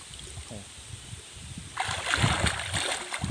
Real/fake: real